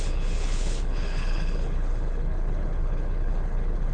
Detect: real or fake fake